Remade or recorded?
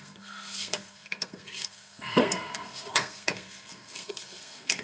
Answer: remade